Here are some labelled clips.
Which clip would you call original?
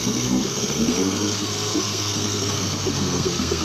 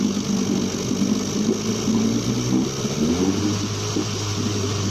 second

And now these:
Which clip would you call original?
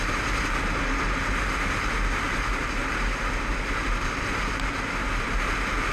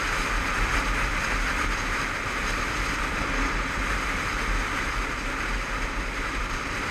first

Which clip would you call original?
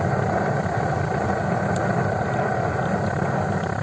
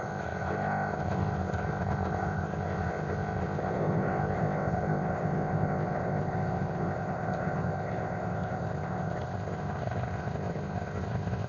first